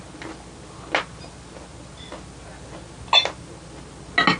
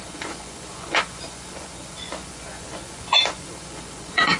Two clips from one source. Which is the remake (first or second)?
second